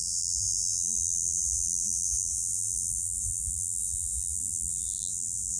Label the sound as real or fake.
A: fake